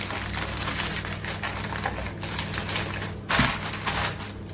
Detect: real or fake real